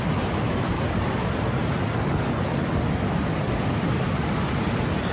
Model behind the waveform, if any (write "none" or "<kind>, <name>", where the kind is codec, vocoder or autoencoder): none